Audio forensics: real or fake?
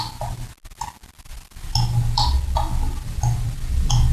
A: real